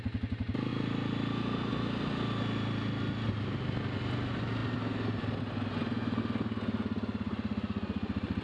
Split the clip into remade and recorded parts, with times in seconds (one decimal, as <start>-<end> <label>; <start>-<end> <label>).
0.0-8.4 recorded